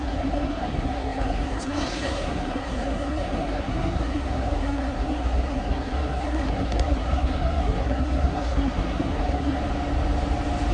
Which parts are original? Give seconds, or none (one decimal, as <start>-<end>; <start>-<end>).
9.6-10.7